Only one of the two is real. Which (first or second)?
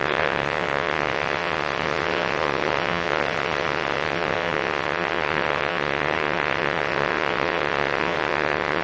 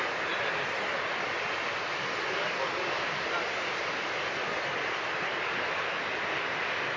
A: second